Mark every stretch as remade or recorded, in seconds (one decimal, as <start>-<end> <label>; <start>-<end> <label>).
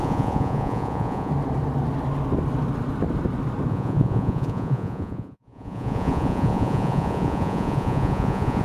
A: 0.0-1.3 remade; 1.3-3.7 recorded; 3.7-8.6 remade